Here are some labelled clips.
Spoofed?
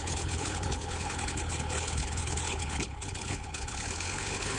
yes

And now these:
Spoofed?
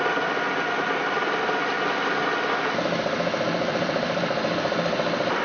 no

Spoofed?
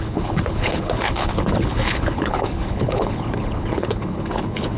yes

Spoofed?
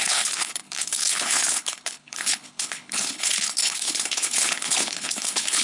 yes